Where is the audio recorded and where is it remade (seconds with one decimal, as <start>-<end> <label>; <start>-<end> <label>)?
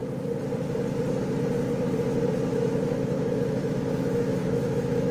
0.0-2.5 recorded; 2.5-5.1 remade